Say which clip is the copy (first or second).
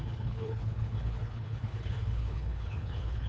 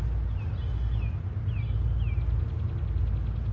first